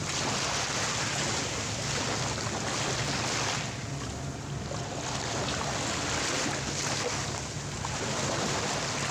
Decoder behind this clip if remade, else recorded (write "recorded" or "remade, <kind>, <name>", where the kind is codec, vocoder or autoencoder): recorded